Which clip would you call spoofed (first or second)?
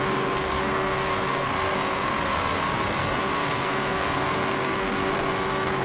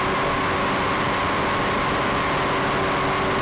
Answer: first